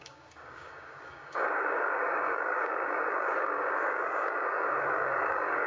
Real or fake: fake